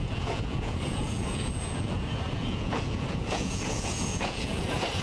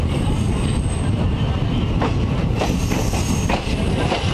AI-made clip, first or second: first